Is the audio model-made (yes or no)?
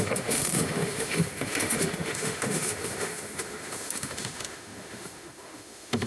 yes